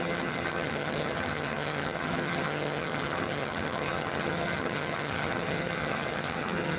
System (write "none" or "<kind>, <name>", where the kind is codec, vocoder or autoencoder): vocoder, HiFi-GAN